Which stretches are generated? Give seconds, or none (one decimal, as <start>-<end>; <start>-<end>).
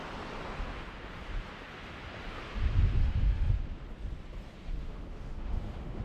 3.0-3.5; 4.8-6.0